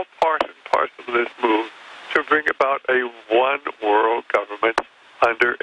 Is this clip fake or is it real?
real